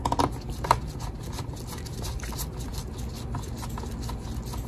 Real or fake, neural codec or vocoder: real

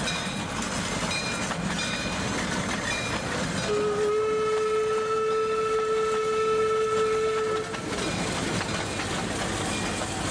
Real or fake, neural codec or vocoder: real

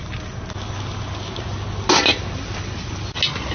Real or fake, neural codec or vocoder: real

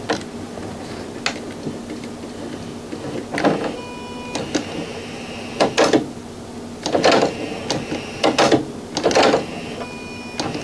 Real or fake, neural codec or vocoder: real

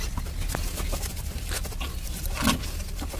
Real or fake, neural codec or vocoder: real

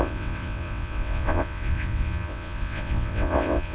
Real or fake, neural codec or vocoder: fake, vocoder, WaveNeXt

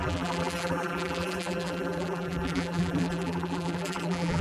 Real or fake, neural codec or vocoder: fake, vocoder, BigVGAN v2